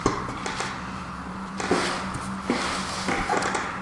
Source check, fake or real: real